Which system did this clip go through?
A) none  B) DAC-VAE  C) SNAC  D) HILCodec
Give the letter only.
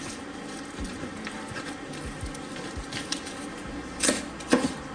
A